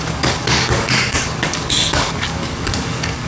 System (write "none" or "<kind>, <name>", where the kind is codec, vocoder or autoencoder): codec, DAC